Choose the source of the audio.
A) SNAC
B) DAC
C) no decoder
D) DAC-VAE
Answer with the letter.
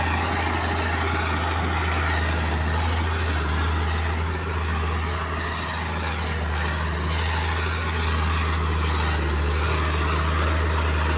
C